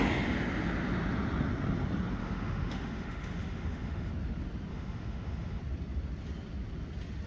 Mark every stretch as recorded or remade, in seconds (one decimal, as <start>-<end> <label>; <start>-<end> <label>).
0.0-2.2 recorded; 2.2-4.1 remade; 4.1-4.7 recorded; 4.7-5.6 remade; 5.6-7.3 recorded